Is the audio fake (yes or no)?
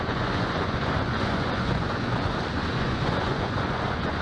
yes